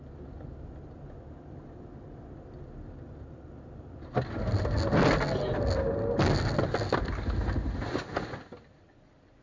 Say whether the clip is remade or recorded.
recorded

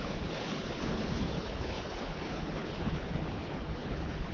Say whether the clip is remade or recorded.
remade